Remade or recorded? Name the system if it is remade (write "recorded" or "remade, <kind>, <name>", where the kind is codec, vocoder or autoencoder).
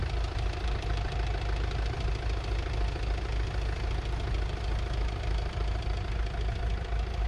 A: recorded